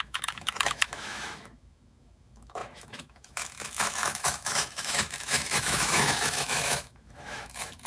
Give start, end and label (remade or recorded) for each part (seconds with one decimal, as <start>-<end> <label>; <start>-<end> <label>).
0.0-7.9 remade